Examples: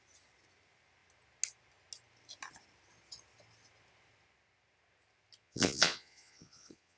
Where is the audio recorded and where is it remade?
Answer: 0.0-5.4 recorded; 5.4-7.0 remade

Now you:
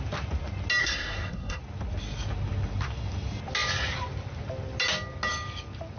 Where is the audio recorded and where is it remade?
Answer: 0.0-0.8 recorded; 0.8-1.6 remade; 1.6-6.0 recorded

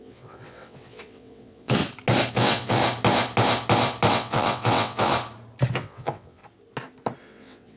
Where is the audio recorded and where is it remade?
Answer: 0.0-1.8 remade; 1.8-2.3 recorded; 2.3-2.8 remade; 2.8-4.1 recorded; 4.1-5.1 remade; 5.1-5.7 recorded; 5.7-6.4 remade; 6.4-7.2 recorded; 7.2-7.8 remade

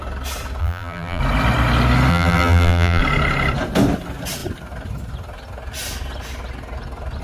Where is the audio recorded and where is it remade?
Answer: 0.0-0.6 recorded; 0.6-1.2 remade; 1.2-2.1 recorded; 2.1-3.0 remade; 3.0-7.2 recorded

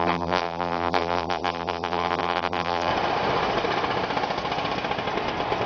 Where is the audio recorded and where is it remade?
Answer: 0.0-2.9 remade; 2.9-5.7 recorded

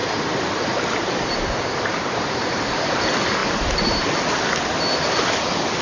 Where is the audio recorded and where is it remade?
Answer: 0.0-2.6 remade; 2.6-5.8 recorded

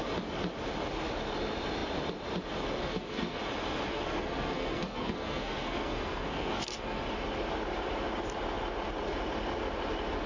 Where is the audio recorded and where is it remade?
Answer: 0.0-2.8 recorded; 2.8-3.4 remade; 3.4-3.9 recorded; 3.9-7.0 remade; 7.0-10.3 recorded